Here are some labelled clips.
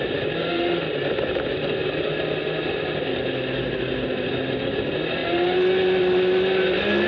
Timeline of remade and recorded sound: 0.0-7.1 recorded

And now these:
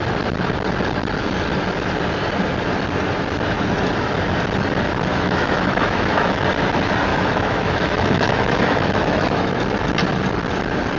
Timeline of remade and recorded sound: 0.0-5.1 recorded; 5.1-6.4 remade; 6.4-7.1 recorded; 7.1-9.6 remade; 9.6-11.0 recorded

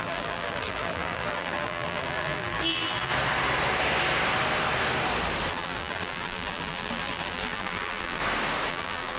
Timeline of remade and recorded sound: 0.0-3.1 remade; 3.1-5.5 recorded; 5.5-8.2 remade; 8.2-8.7 recorded; 8.7-9.2 remade

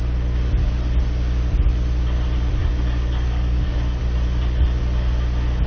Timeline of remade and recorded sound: 0.0-2.6 recorded; 2.6-4.0 remade; 4.0-5.7 recorded

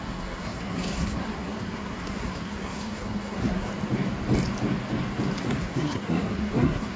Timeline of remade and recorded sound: 0.0-3.7 remade; 3.7-5.4 recorded; 5.4-7.0 remade

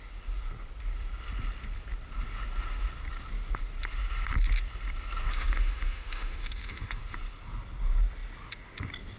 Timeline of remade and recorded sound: 0.0-5.3 recorded; 5.3-7.0 remade; 7.0-9.2 recorded

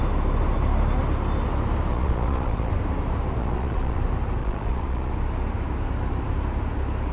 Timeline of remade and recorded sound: 0.0-1.9 recorded; 1.9-2.7 remade; 2.7-3.4 recorded; 3.4-4.0 remade; 4.0-4.4 recorded; 4.4-5.1 remade; 5.1-7.1 recorded

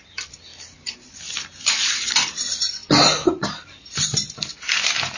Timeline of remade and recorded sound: 0.0-2.8 remade; 2.8-3.8 recorded; 3.8-5.2 remade